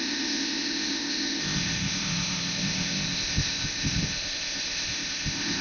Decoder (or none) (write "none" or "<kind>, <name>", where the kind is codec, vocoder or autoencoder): codec, ZipCodec